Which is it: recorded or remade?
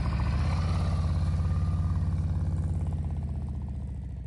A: recorded